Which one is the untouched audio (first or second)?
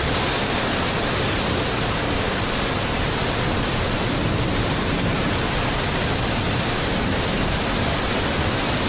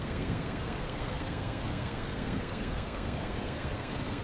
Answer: first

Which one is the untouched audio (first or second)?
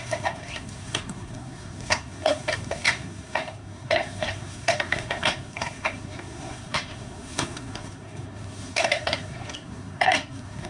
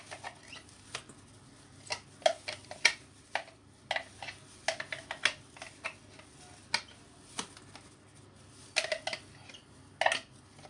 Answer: second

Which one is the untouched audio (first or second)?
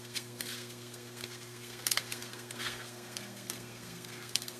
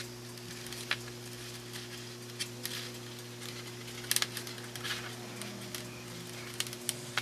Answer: second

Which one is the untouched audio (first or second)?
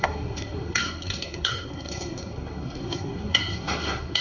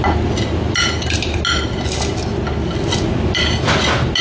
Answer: second